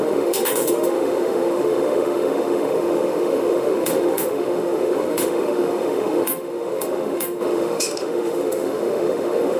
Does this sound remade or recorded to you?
remade